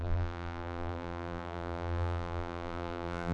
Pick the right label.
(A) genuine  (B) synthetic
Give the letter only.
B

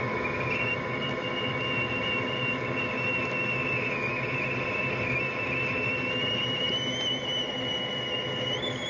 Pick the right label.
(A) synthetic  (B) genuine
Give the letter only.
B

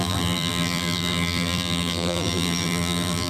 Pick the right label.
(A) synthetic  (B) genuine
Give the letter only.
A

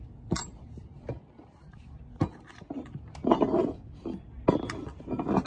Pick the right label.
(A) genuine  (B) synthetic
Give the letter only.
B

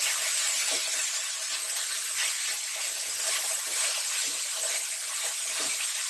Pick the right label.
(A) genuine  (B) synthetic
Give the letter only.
A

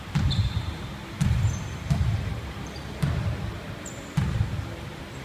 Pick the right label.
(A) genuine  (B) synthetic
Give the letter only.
B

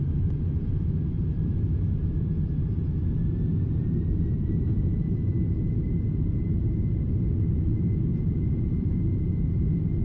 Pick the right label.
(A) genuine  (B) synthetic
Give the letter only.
B